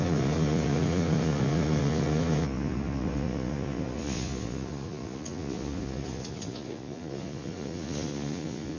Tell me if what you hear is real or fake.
fake